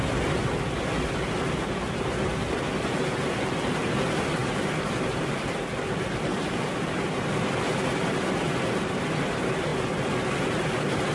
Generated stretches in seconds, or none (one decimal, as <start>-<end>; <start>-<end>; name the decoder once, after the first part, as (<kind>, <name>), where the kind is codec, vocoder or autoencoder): 4.4-8.9 (vocoder, BigVGAN v2)